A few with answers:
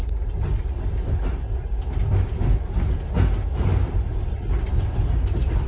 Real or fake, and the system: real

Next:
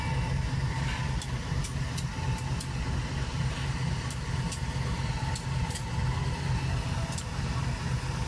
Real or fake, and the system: real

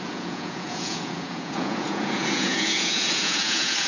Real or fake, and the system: fake, vocoder, Vocos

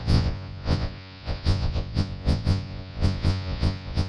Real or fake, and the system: fake, vocoder, Vocos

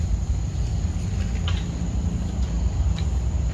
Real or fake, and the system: real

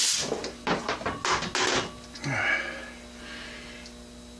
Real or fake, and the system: real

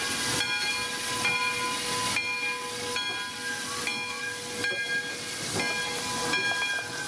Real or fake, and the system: real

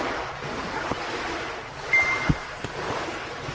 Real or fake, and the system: real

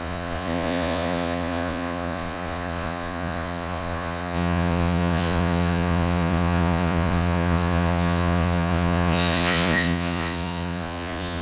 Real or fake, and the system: fake, vocoder, Vocos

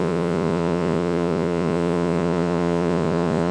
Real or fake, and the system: fake, vocoder, Vocos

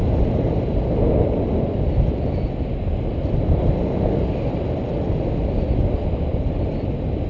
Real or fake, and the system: real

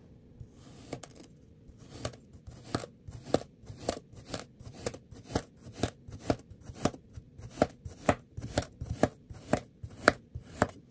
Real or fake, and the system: real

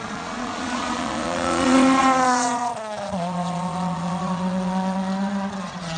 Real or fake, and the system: fake, vocoder, Vocos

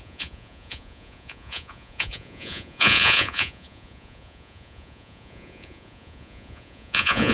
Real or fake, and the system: fake, vocoder, Vocos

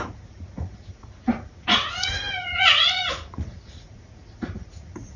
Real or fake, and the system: fake, vocoder, Vocos